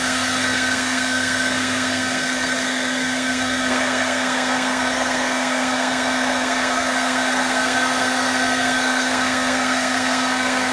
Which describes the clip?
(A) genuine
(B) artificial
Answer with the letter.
B